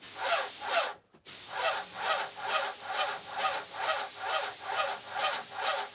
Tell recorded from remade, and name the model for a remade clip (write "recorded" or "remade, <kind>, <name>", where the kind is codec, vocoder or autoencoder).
recorded